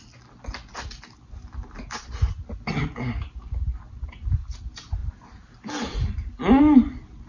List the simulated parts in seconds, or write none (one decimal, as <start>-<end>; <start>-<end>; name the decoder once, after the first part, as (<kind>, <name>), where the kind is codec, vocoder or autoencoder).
none